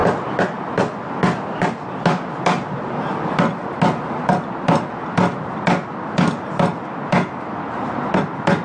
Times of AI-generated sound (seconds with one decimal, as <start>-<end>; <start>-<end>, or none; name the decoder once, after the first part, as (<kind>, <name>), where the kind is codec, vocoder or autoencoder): none